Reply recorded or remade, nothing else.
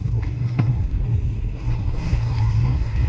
remade